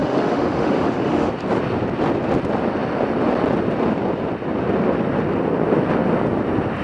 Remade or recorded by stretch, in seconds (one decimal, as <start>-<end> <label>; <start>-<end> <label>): 0.0-1.3 remade; 1.3-6.8 recorded